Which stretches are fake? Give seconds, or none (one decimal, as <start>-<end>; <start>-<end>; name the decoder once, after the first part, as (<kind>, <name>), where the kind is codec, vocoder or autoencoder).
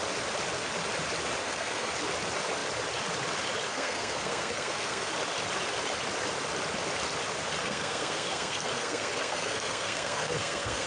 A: 1.4-1.9 (codec, SNAC); 3.7-5.1; 7.6-10.9